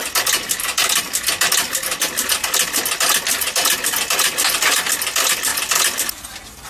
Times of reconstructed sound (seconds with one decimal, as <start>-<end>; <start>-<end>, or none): none